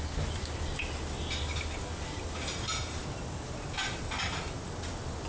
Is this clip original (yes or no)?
yes